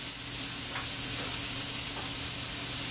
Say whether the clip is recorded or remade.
recorded